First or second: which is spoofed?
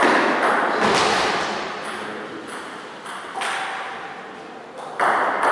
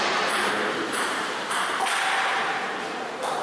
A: second